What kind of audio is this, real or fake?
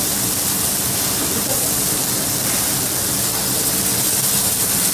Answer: real